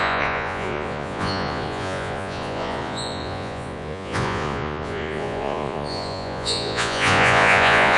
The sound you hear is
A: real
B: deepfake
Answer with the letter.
B